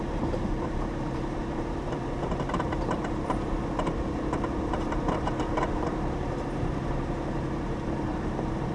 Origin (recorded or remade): remade